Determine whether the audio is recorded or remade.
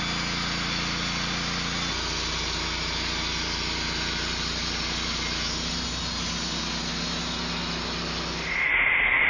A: recorded